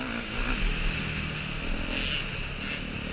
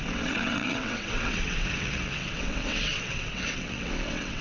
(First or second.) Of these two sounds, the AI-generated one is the second